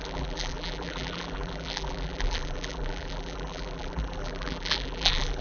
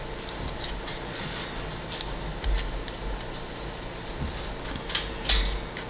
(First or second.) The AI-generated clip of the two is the first